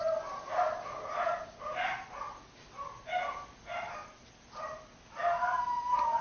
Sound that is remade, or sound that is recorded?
recorded